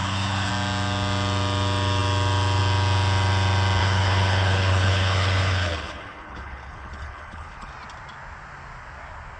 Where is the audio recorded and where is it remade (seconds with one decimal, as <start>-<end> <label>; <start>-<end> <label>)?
0.0-0.5 remade; 0.5-3.8 recorded; 3.8-7.7 remade; 7.7-9.4 recorded

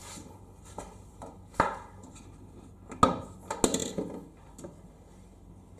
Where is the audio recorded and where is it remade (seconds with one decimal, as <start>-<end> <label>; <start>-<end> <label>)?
0.0-5.8 recorded